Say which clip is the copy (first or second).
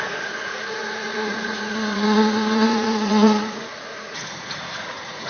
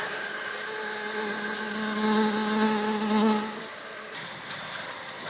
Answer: first